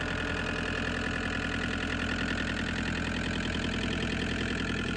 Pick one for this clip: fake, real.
real